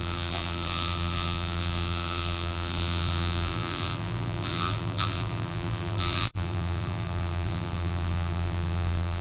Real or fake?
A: fake